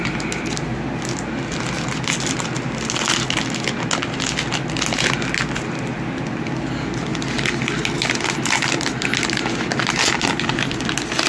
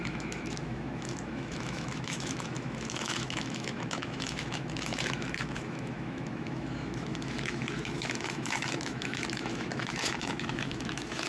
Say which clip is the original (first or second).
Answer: first